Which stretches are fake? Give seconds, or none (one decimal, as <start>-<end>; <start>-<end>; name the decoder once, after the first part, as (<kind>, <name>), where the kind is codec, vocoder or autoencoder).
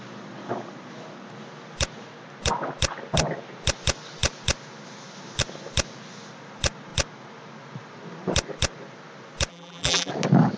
9.5-10.1 (vocoder, BigVGAN v2)